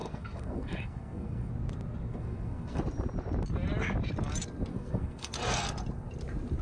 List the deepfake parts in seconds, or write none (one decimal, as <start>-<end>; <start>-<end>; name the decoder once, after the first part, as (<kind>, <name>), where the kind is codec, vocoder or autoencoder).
0.0-1.5 (codec, SNAC); 2.1-2.8; 4.7-5.3